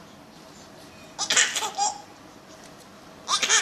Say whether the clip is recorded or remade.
recorded